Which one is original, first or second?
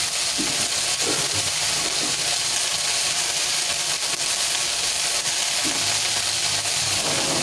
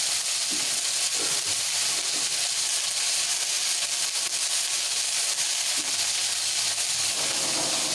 second